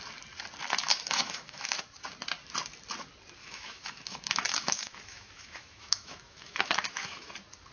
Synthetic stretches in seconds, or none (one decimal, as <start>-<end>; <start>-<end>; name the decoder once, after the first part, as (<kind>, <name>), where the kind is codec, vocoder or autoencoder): 0.9-1.8 (autoencoder, DAC-VAE); 3.4-7.3